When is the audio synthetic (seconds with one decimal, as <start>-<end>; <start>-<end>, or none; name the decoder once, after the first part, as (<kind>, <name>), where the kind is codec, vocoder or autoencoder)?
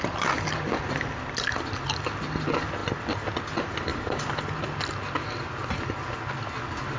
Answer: 3.9-4.6 (vocoder, BigVGAN v2)